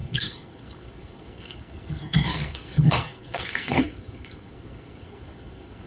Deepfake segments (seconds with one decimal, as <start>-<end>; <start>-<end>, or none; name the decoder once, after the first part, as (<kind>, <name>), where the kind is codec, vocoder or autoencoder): 0.0-5.9 (codec, SNAC)